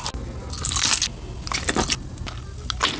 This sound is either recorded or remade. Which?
recorded